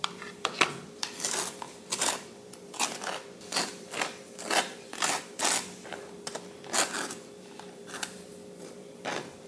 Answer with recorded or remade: remade